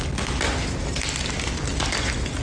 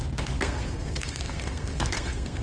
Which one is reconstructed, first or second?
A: second